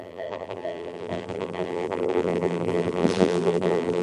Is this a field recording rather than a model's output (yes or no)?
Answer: no